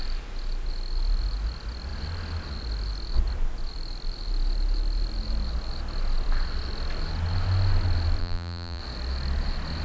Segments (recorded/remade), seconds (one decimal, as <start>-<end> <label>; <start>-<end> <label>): 0.0-8.2 recorded; 8.2-8.8 remade; 8.8-9.8 recorded